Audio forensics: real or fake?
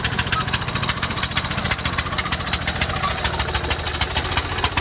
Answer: real